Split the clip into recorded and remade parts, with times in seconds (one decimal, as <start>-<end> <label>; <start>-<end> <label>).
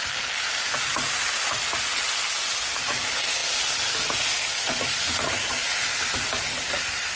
0.0-7.2 recorded